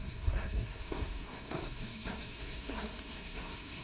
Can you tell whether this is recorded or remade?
remade